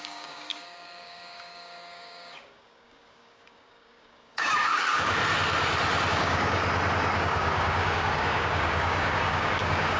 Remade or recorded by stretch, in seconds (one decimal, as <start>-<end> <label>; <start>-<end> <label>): 0.0-5.2 remade; 5.2-6.1 recorded; 6.1-6.6 remade; 6.6-7.2 recorded; 7.2-10.0 remade